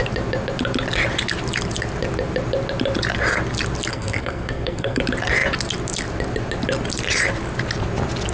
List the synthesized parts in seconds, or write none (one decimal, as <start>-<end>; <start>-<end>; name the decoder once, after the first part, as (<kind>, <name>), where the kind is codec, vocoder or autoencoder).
3.9-5.0 (codec, SNAC)